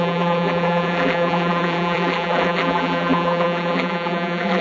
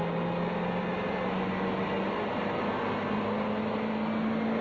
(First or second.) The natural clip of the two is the second